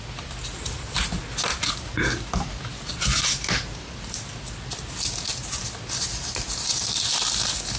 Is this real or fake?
real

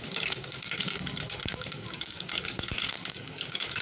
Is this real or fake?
fake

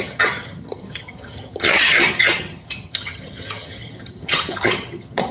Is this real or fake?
fake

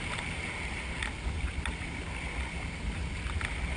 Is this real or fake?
real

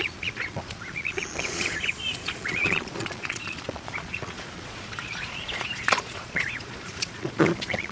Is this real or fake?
fake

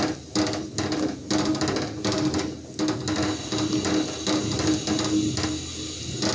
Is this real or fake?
real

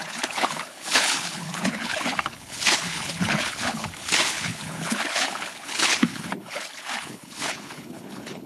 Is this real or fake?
fake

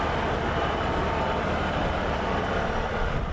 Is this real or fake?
real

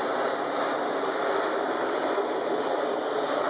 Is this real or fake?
fake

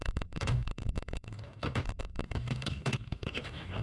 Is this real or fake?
fake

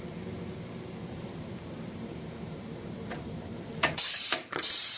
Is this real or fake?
fake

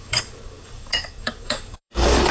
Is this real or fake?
fake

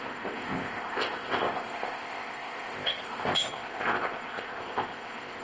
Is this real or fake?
fake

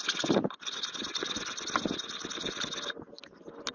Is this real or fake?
real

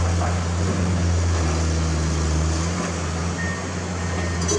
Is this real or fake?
real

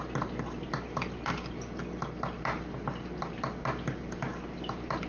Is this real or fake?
real